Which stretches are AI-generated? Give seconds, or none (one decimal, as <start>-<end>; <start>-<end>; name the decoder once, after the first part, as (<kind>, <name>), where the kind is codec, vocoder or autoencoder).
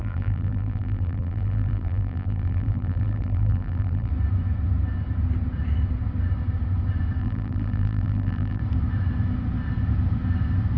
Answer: 0.0-4.1 (vocoder, BigVGAN v2); 7.2-8.6